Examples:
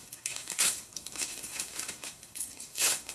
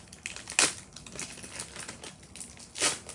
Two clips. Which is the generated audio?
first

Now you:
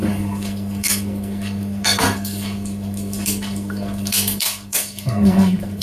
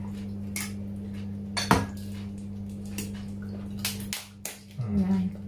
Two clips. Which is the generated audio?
first